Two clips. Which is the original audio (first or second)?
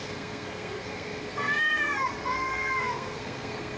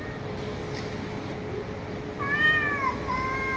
second